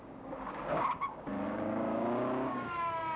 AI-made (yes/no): yes